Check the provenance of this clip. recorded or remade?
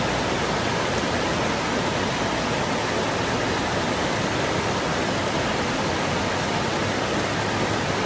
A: recorded